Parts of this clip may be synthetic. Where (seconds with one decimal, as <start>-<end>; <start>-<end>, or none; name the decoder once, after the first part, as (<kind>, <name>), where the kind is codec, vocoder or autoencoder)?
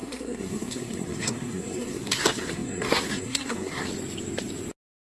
0.0-3.9 (codec, SNAC)